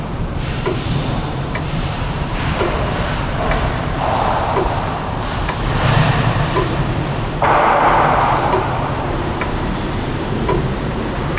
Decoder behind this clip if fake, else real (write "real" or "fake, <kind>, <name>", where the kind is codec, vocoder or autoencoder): fake, vocoder, BigVGAN v2